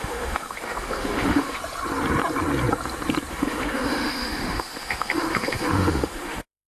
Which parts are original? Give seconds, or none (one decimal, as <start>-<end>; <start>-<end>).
1.6-3.3